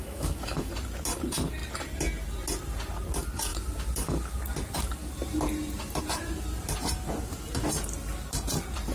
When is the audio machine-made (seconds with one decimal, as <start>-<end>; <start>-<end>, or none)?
0.0-0.7